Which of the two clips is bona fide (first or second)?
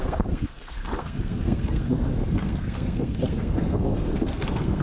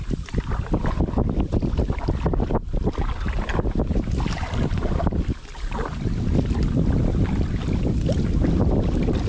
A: second